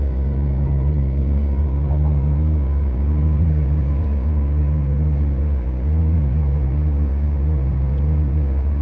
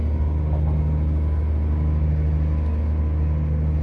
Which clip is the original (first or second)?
second